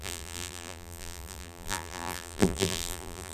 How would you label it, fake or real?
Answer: fake